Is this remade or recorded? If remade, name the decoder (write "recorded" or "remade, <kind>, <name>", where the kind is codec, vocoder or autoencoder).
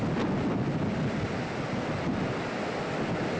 recorded